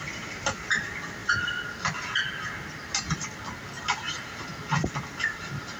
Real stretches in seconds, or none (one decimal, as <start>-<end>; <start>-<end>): 0.0-5.8